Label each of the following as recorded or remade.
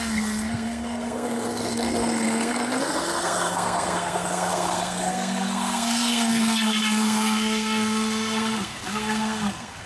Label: remade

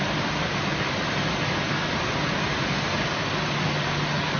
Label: recorded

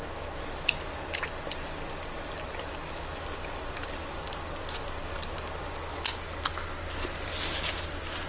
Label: recorded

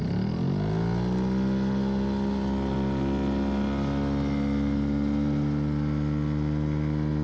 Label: recorded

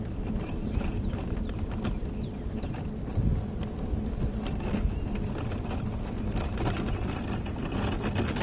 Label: recorded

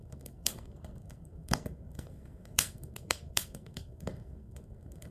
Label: remade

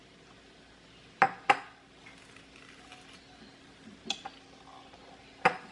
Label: recorded